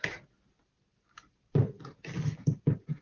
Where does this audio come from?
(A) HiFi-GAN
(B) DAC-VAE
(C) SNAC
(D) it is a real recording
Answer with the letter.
D